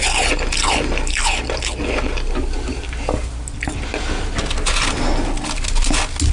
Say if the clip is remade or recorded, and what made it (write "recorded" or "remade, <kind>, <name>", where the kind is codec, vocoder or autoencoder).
recorded